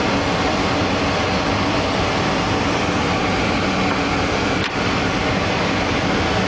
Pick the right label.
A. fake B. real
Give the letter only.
B